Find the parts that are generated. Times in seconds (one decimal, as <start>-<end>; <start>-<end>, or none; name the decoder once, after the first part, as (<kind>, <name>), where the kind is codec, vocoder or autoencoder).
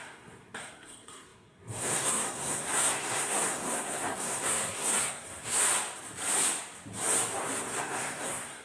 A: 0.0-5.6 (codec, SNAC); 7.8-8.6